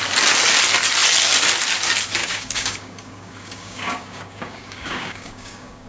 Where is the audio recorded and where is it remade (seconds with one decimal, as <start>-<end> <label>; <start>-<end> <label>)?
0.0-2.2 recorded; 2.2-5.9 remade

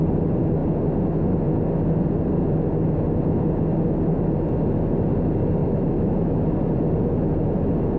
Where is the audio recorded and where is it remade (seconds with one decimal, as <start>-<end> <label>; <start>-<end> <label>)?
0.0-5.6 recorded; 5.6-6.5 remade; 6.5-8.0 recorded

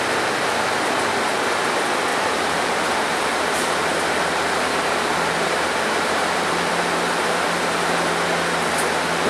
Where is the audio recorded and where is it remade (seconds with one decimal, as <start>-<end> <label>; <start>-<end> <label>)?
0.0-2.1 recorded; 2.1-6.7 remade; 6.7-9.3 recorded